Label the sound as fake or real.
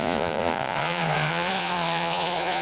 fake